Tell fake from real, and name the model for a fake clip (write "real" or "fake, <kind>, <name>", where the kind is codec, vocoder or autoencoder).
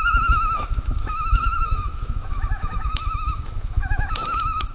fake, autoencoder, DAC-VAE